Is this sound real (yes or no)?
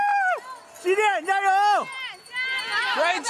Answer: yes